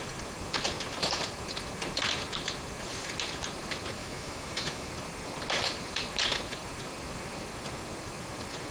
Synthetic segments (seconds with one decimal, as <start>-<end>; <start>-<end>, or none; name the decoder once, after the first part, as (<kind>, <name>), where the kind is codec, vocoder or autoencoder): 4.0-4.9 (autoencoder, DAC-VAE)